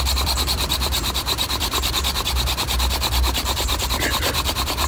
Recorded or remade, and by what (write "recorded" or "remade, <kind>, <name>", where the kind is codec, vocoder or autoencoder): remade, vocoder, BigVGAN v2